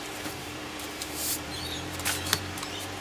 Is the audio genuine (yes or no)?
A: no